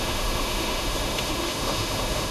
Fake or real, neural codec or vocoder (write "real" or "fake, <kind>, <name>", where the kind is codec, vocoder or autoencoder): fake, autoencoder, DAC-VAE